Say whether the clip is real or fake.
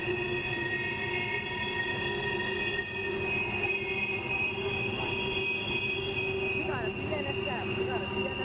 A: real